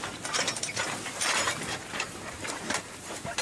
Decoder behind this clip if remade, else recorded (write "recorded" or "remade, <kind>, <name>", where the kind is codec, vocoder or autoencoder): remade, vocoder, BigVGAN v2